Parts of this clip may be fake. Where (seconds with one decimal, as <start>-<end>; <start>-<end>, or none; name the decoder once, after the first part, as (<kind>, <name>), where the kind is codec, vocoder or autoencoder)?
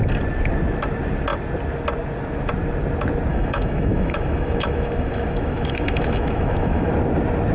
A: 3.3-6.9 (autoencoder, DAC-VAE)